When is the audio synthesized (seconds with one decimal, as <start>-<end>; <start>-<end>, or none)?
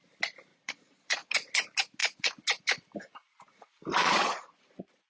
0.5-1.3; 4.0-5.1